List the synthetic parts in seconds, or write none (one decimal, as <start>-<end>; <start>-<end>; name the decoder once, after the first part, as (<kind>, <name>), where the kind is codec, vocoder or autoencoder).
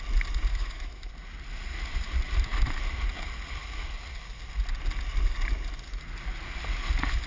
0.5-1.1 (autoencoder, DAC-VAE)